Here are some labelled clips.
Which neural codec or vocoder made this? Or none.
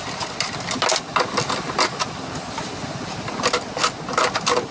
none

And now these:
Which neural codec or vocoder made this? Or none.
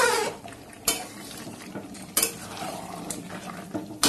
vocoder, BigVGAN v2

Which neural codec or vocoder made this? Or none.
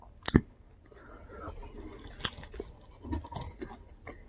none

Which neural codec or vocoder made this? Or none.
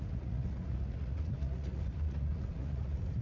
vocoder, Vocos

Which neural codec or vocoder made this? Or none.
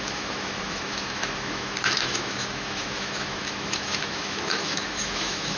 autoencoder, DAC-VAE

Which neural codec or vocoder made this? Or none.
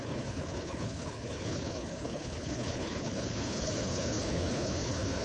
codec, HILCodec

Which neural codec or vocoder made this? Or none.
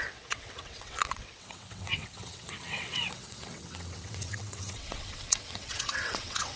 vocoder, WaveNeXt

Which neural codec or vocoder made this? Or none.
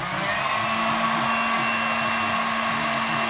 none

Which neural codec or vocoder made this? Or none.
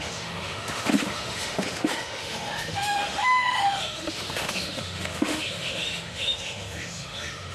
autoencoder, DAC-VAE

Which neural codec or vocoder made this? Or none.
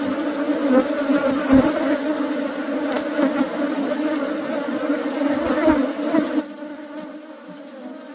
none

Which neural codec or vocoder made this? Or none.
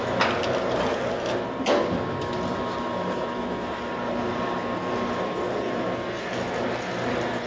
none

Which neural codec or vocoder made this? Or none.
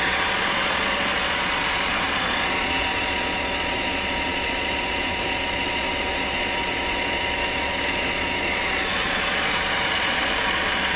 vocoder, Vocos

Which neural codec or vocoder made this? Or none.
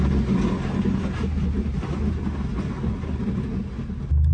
none